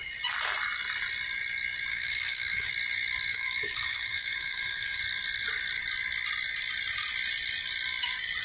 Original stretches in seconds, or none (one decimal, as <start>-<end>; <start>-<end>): 0.0-1.9; 2.7-3.3; 5.0-8.4